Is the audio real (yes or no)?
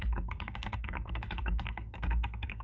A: no